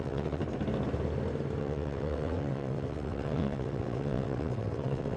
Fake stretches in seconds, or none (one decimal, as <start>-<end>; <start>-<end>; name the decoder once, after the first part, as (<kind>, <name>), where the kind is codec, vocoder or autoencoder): 0.0-0.4 (vocoder, WaveNeXt); 1.6-5.2